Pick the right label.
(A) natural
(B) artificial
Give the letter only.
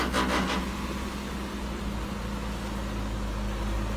A